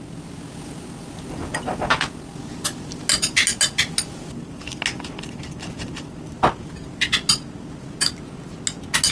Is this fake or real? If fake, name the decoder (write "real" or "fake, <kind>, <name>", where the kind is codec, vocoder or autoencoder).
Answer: real